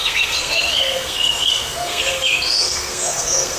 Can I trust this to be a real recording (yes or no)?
no